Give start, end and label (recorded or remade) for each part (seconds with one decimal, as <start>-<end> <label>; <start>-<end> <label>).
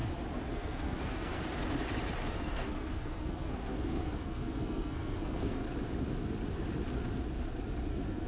0.0-0.5 recorded; 0.5-1.4 remade; 1.4-2.3 recorded; 2.3-5.6 remade; 5.6-7.9 recorded; 7.9-8.3 remade